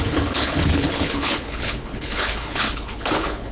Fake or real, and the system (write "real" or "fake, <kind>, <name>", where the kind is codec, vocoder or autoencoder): fake, codec, HILCodec